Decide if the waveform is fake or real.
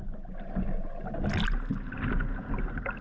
real